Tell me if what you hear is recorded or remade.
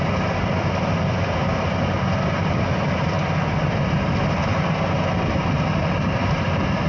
recorded